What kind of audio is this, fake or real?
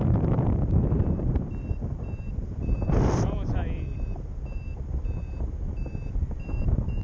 fake